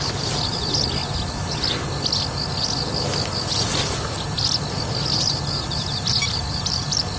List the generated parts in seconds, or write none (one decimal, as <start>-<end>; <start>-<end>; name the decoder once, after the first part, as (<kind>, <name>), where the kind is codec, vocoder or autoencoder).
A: 0.0-1.0 (vocoder, BigVGAN v2); 5.3-7.2